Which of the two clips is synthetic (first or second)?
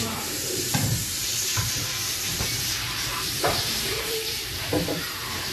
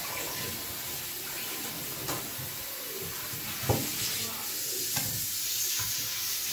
first